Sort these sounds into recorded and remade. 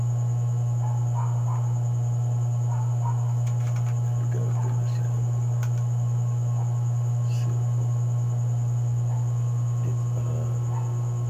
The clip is recorded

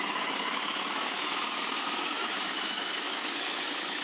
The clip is remade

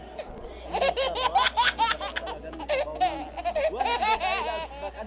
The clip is recorded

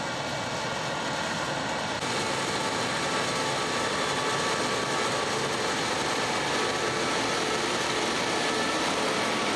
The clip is recorded